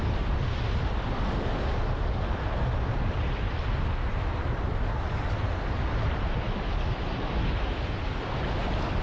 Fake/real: real